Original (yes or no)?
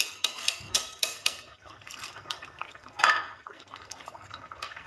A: no